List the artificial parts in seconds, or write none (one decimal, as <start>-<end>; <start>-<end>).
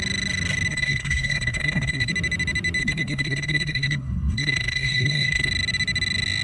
0.7-2.1; 2.8-5.5